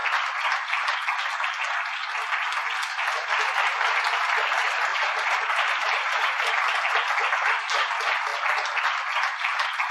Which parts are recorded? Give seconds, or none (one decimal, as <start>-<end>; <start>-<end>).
0.0-4.9; 6.5-9.9